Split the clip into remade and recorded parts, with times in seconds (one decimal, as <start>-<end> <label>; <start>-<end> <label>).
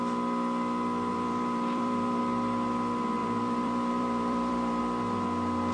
0.0-1.1 recorded; 1.1-2.2 remade; 2.2-3.2 recorded; 3.2-4.8 remade; 4.8-5.7 recorded